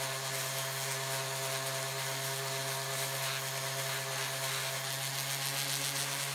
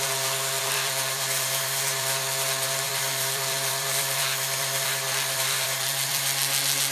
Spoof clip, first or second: second